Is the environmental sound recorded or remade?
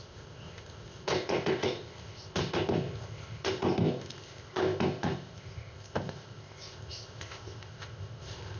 remade